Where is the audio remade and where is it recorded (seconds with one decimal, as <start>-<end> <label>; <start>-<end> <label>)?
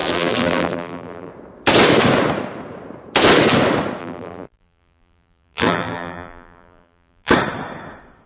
0.0-1.3 remade; 1.3-4.0 recorded; 4.0-7.3 remade; 7.3-8.3 recorded